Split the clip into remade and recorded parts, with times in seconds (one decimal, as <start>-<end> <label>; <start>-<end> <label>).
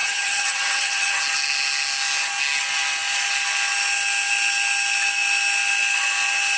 0.0-1.2 remade; 1.2-6.6 recorded